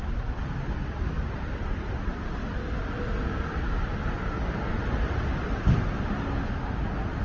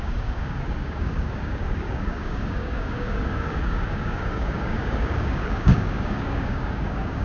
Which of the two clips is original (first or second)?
first